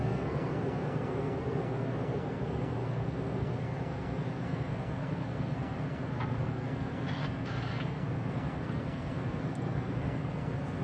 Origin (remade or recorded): remade